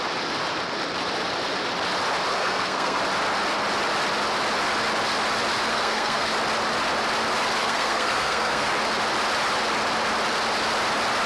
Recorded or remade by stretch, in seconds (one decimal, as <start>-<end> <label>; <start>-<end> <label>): 0.0-2.3 recorded; 2.3-3.0 remade; 3.0-5.7 recorded; 5.7-6.3 remade; 6.3-7.6 recorded; 7.6-8.7 remade; 8.7-11.3 recorded